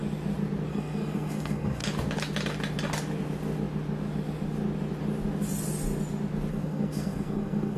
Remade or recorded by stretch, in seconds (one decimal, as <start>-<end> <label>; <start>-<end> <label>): 0.0-0.7 recorded; 0.7-1.8 remade; 1.8-6.5 recorded; 6.5-7.8 remade